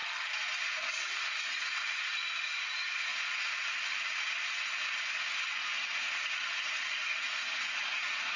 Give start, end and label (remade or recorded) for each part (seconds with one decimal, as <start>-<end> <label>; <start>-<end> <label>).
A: 0.0-0.7 recorded; 0.7-3.1 remade; 3.1-7.1 recorded; 7.1-8.4 remade